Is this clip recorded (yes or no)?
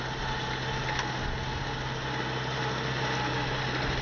yes